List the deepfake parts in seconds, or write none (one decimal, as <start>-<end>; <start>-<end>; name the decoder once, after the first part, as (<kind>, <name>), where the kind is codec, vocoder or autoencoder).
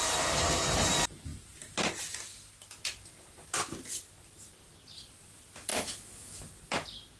5.7-6.4 (autoencoder, DAC-VAE)